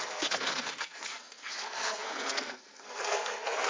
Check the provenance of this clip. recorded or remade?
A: remade